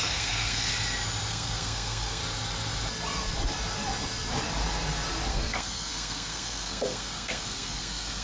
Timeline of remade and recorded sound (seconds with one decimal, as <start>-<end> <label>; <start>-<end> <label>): 0.0-0.7 remade; 0.7-1.3 recorded; 1.3-2.2 remade; 2.2-5.3 recorded; 5.3-8.2 remade